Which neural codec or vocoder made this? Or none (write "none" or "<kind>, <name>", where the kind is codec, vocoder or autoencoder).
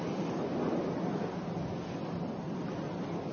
none